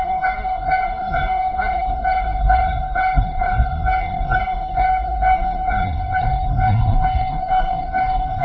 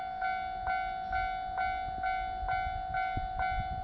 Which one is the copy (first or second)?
first